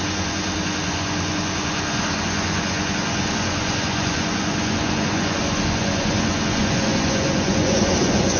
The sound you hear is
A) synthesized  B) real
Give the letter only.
A